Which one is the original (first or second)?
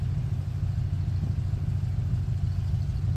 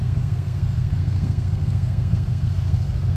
first